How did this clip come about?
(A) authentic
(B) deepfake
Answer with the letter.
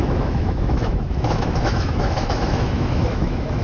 B